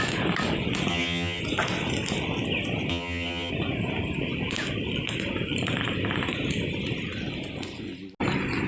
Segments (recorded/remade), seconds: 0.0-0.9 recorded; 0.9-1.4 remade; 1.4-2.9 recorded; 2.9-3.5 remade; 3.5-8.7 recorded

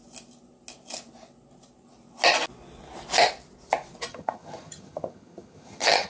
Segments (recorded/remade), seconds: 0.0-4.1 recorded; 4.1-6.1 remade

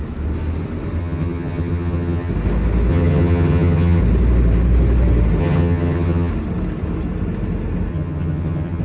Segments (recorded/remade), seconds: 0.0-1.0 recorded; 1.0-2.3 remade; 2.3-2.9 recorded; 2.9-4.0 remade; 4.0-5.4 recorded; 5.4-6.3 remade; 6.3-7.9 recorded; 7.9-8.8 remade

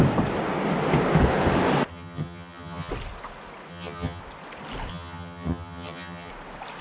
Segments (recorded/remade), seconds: 0.0-1.9 recorded; 1.9-2.9 remade; 2.9-3.7 recorded; 3.7-4.2 remade; 4.2-4.9 recorded; 4.9-6.3 remade; 6.3-6.8 recorded

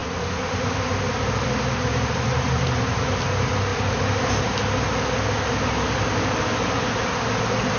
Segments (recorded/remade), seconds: 0.0-7.8 recorded

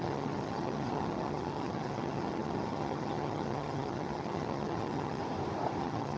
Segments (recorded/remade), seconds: 0.0-5.2 remade; 5.2-5.8 recorded; 5.8-6.2 remade